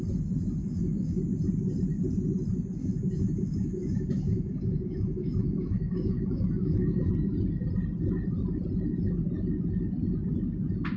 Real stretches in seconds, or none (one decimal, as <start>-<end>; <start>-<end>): 0.0-0.6; 1.2-2.8; 7.1-11.0